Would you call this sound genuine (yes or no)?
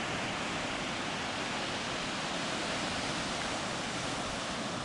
yes